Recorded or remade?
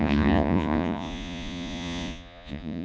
remade